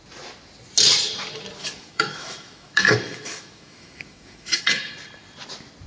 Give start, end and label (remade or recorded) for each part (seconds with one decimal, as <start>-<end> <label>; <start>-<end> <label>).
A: 0.0-1.6 recorded; 1.6-4.9 remade; 4.9-5.9 recorded